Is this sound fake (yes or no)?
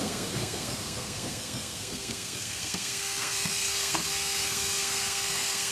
yes